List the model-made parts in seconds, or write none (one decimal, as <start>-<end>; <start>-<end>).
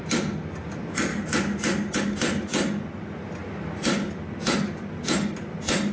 none